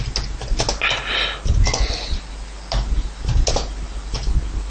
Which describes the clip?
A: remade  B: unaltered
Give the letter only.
B